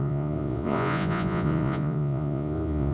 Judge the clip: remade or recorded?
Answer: remade